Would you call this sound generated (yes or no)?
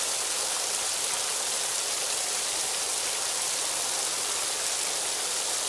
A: no